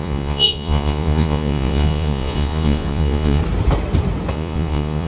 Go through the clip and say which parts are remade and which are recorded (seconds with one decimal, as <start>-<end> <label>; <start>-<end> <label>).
0.0-3.4 remade; 3.4-4.3 recorded; 4.3-5.1 remade

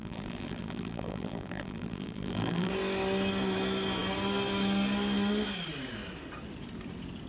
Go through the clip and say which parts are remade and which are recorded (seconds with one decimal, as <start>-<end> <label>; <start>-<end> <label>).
0.0-2.7 remade; 2.7-7.3 recorded

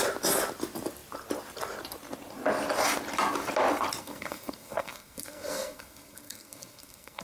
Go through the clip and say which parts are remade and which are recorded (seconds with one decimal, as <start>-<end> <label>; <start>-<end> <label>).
0.0-4.0 recorded; 4.0-7.2 remade

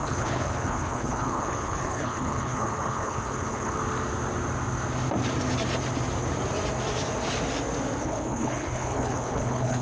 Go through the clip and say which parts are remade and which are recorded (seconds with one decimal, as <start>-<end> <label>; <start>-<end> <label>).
0.0-3.8 remade; 3.8-8.0 recorded; 8.0-9.8 remade

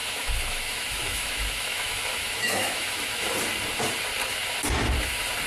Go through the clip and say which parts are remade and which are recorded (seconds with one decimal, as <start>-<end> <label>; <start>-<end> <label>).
0.0-3.3 remade; 3.3-5.5 recorded

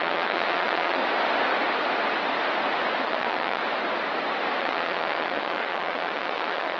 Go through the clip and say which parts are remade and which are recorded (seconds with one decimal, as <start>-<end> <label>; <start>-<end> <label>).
0.0-1.0 remade; 1.0-3.0 recorded; 3.0-3.6 remade; 3.6-4.6 recorded; 4.6-6.8 remade

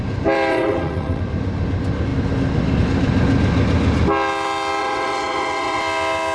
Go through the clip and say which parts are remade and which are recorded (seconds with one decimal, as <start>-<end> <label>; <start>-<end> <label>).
0.0-0.5 recorded; 0.5-1.2 remade; 1.2-4.8 recorded; 4.8-5.8 remade; 5.8-6.3 recorded